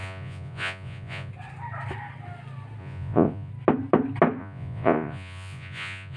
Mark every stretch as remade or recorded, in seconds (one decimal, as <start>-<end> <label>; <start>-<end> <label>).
0.0-1.3 remade; 1.3-2.8 recorded; 2.8-3.5 remade; 3.5-4.4 recorded; 4.4-6.2 remade